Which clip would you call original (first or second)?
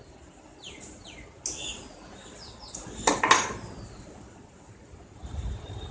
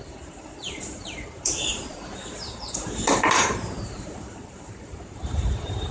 first